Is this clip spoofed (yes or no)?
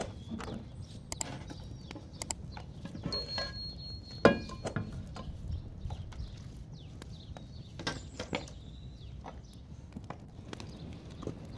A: no